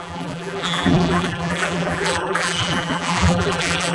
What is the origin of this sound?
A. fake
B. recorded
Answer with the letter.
A